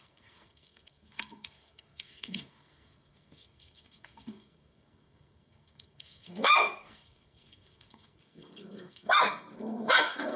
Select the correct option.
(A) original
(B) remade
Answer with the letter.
B